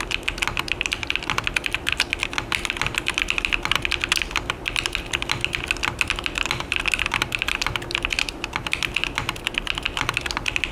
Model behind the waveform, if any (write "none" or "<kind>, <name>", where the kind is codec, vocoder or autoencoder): none